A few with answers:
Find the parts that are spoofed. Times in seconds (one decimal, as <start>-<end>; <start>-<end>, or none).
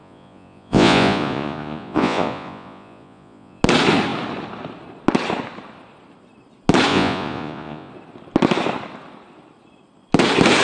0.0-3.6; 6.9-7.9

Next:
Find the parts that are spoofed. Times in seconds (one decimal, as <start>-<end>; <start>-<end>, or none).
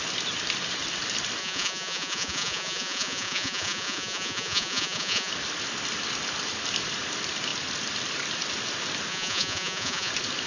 1.4-5.3; 9.1-10.1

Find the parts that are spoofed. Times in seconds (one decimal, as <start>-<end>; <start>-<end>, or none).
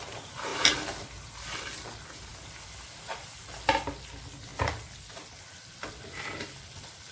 none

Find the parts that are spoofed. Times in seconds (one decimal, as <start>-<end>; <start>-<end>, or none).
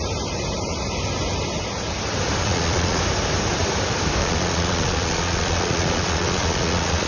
2.4-3.0; 4.2-7.1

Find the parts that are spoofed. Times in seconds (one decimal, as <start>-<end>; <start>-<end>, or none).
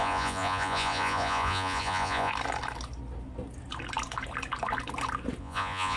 0.0-2.3; 5.4-6.0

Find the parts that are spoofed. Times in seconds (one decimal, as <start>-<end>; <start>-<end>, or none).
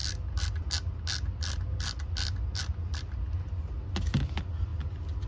none